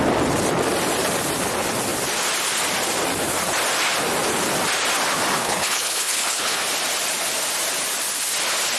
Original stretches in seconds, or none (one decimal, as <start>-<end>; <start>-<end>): 0.0-5.4; 6.6-8.8